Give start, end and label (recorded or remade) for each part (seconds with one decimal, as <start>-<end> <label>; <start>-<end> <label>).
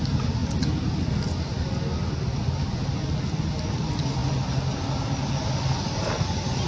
0.0-6.7 recorded